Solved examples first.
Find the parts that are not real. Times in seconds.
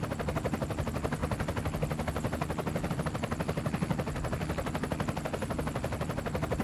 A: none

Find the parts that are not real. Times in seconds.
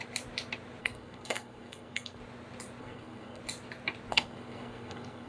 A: 0.8-2.2; 2.8-3.4; 4.1-5.3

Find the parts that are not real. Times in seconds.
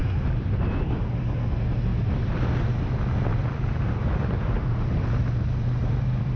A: 0.0-0.6; 3.3-6.4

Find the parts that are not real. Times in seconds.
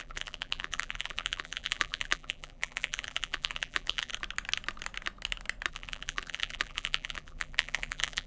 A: 0.0-4.1; 5.7-8.3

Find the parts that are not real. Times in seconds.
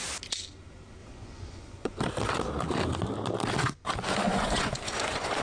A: 1.0-2.0; 4.3-5.4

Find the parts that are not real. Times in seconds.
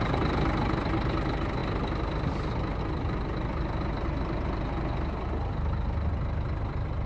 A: none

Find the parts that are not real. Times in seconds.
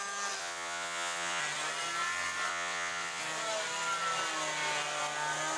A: 0.4-1.4; 2.5-3.2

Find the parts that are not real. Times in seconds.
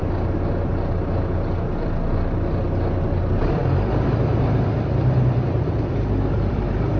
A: 3.2-7.0